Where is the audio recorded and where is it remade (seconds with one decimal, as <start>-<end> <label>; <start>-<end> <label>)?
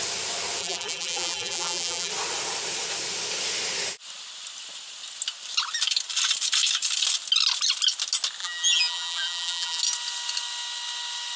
0.0-0.6 recorded; 0.6-2.1 remade; 2.1-8.4 recorded; 8.4-9.8 remade; 9.8-11.4 recorded